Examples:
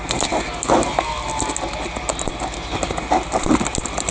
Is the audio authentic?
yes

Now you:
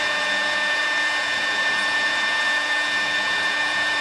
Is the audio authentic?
no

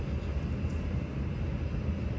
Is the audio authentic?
yes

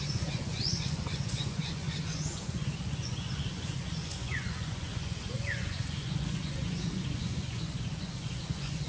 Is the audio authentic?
no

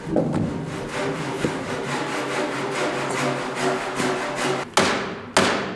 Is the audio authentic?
yes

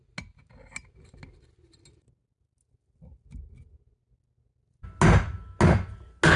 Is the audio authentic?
yes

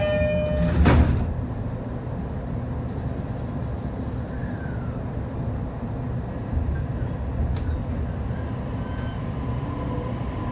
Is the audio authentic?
yes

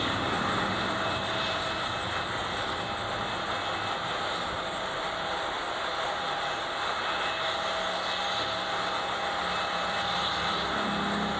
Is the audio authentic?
yes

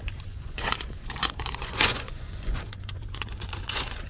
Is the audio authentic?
no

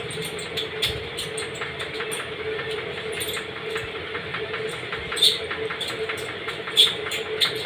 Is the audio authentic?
yes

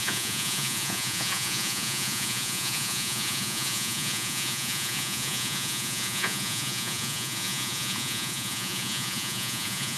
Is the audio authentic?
no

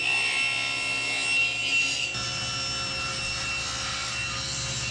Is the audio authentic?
yes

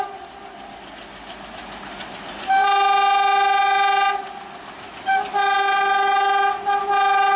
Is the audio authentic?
yes